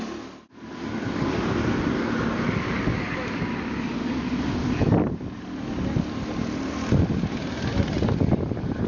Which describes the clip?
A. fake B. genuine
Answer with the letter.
B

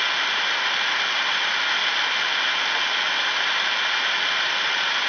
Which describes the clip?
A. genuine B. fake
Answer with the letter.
A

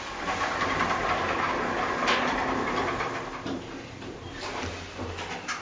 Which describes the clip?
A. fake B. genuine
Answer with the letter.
A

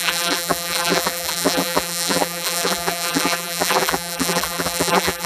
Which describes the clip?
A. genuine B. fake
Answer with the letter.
B